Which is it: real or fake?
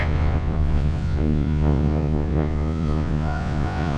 fake